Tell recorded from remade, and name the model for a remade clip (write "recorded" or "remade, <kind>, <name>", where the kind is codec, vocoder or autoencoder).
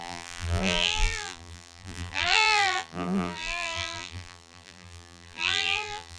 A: remade, vocoder, BigVGAN v2